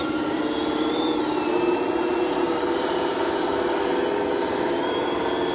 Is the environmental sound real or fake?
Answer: real